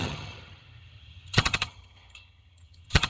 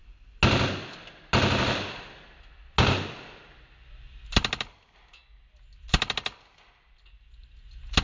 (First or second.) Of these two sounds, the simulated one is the first